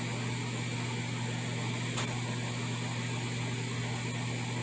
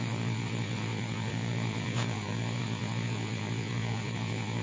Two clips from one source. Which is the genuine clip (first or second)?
first